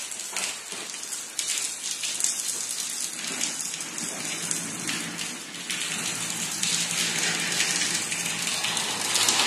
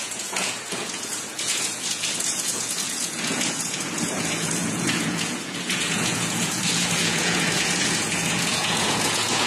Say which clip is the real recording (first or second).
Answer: first